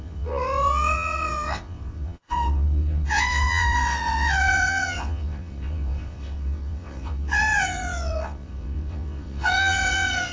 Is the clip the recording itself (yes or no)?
no